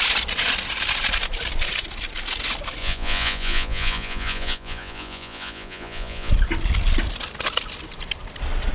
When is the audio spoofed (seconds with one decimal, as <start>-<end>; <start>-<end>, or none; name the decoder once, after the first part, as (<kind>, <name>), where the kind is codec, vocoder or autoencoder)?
2.8-6.3 (vocoder, Vocos)